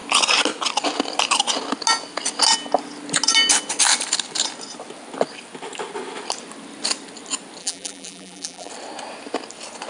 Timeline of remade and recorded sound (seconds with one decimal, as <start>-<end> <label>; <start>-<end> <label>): 0.0-7.6 recorded; 7.6-8.7 remade; 8.7-9.9 recorded